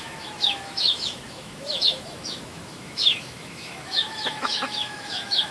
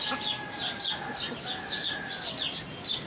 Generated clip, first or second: first